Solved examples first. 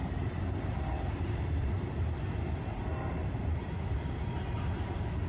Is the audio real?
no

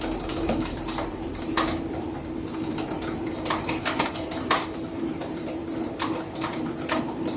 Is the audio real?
no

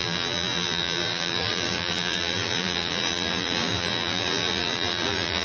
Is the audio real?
no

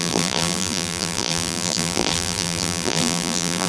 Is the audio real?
no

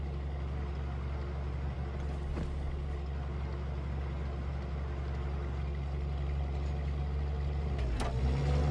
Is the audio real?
yes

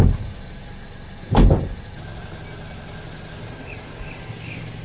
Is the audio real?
yes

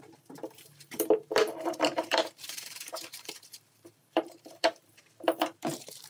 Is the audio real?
no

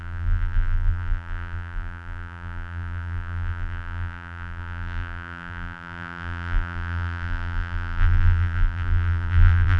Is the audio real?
no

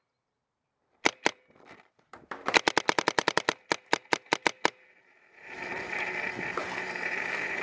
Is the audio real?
no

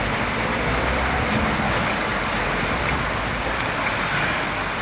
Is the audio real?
yes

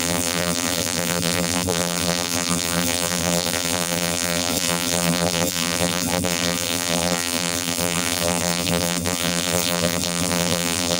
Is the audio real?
no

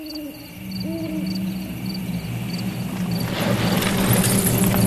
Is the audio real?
yes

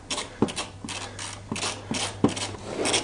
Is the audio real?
yes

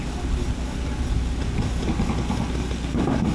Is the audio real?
yes